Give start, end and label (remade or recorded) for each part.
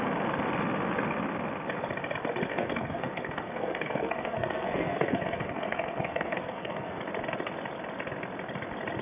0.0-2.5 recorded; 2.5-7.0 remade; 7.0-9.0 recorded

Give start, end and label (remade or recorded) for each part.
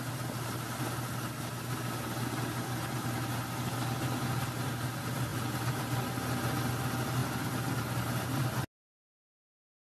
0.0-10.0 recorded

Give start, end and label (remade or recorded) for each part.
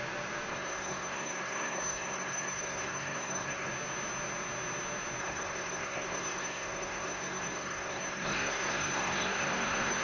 0.0-0.5 recorded; 0.5-3.7 remade; 3.7-5.2 recorded; 5.2-10.0 remade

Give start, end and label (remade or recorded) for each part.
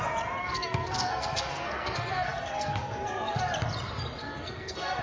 0.0-0.4 recorded; 0.4-3.4 remade; 3.4-4.2 recorded; 4.2-5.0 remade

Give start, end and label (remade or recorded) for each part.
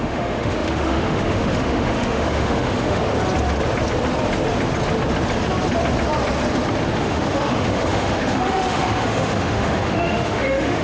0.0-3.0 remade; 3.0-7.0 recorded; 7.0-10.8 remade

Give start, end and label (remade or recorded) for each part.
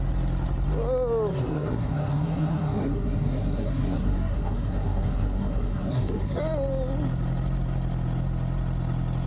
0.0-1.3 recorded; 1.3-6.4 remade; 6.4-9.3 recorded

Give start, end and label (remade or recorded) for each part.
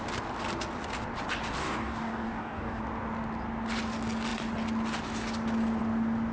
0.0-1.6 recorded; 1.6-2.8 remade; 2.8-6.3 recorded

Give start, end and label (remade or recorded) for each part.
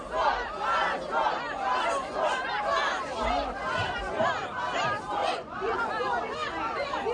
0.0-2.0 recorded; 2.0-2.5 remade; 2.5-5.2 recorded; 5.2-5.9 remade; 5.9-7.1 recorded